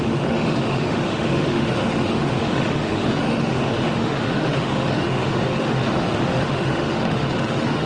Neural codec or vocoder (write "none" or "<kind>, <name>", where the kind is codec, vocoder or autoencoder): autoencoder, DAC-VAE